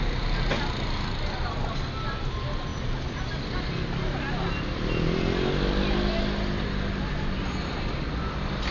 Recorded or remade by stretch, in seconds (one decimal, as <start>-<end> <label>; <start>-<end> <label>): 0.0-8.7 recorded